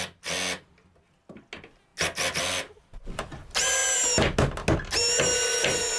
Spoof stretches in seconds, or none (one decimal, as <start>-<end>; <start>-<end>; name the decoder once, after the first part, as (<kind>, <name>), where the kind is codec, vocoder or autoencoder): none